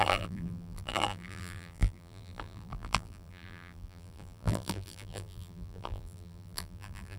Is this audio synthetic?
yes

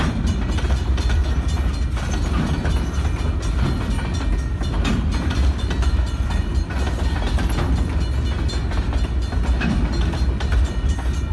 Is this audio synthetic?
no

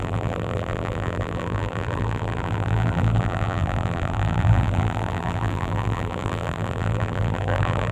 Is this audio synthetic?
yes